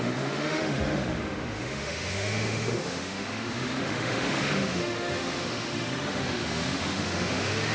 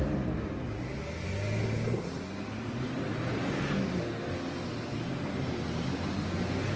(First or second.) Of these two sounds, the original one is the second